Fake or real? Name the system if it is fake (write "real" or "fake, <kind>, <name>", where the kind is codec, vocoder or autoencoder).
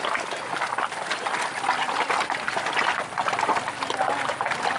real